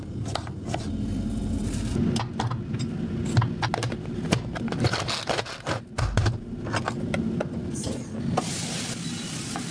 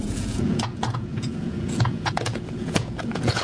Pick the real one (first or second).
first